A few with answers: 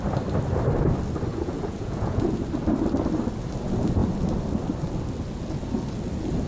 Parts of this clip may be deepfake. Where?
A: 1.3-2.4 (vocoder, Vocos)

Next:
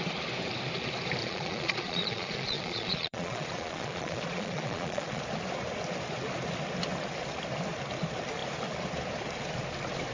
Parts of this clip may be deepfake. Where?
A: 1.2-5.2 (vocoder, Vocos)

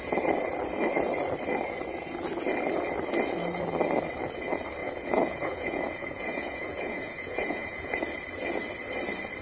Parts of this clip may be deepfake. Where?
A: 4.8-8.0 (vocoder, Vocos)